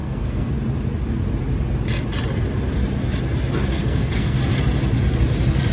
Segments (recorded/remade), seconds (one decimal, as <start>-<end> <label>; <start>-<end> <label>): 0.0-0.5 remade; 0.5-3.8 recorded; 3.8-4.4 remade; 4.4-5.7 recorded